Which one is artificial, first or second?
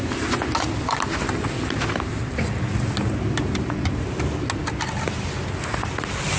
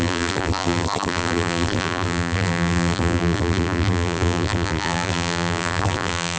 second